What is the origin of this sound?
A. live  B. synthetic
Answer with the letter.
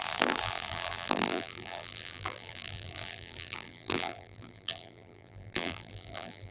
B